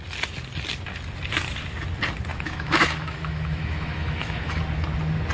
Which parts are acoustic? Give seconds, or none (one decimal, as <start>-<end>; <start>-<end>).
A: 0.0-2.3; 4.6-5.3